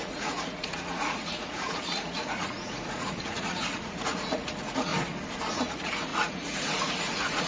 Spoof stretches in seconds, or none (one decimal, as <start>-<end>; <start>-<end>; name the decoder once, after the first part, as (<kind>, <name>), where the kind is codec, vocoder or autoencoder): 0.0-4.9 (vocoder, Vocos); 5.5-7.5